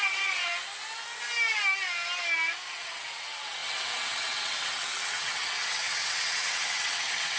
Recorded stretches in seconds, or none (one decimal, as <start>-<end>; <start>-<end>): 0.5-2.7